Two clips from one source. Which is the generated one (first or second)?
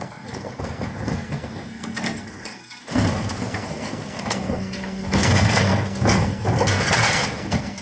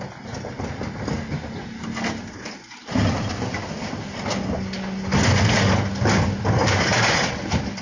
first